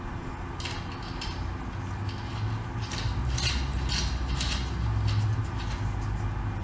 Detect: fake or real real